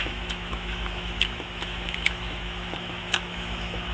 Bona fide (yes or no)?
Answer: no